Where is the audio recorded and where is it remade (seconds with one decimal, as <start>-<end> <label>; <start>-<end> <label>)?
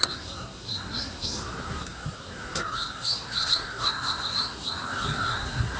0.0-5.8 remade